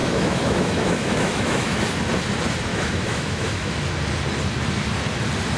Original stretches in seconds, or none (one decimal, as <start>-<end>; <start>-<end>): 1.8-2.7; 3.7-5.6